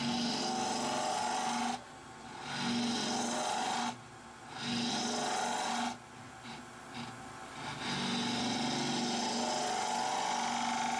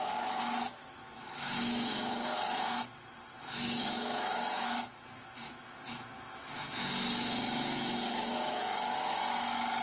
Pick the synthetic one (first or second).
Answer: second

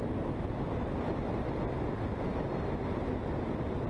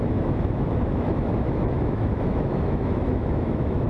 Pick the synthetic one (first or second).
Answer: second